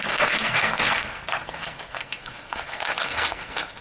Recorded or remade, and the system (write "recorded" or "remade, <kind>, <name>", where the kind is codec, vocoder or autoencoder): remade, codec, SNAC